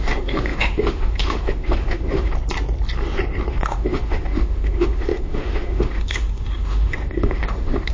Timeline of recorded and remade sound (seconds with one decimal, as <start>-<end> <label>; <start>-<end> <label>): 0.0-2.3 remade; 2.3-3.5 recorded; 3.5-7.9 remade